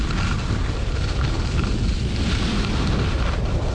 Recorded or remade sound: recorded